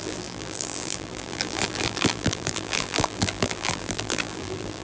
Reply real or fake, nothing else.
fake